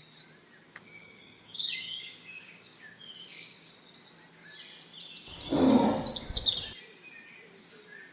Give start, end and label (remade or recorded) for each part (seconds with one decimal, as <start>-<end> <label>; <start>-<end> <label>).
0.0-0.7 recorded; 0.7-3.7 remade; 3.7-8.1 recorded